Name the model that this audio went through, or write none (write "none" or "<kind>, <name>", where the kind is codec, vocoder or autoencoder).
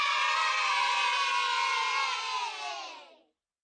none